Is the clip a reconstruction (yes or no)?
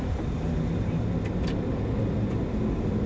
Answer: no